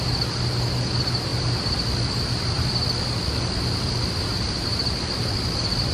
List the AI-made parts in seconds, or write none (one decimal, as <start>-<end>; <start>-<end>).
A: none